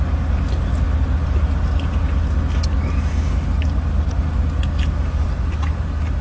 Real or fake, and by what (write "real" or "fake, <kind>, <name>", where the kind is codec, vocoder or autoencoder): real